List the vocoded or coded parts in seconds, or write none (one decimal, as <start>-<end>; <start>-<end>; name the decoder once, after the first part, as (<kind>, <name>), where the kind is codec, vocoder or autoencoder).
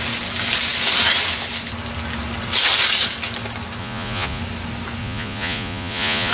3.8-4.4 (vocoder, Vocos); 5.0-6.3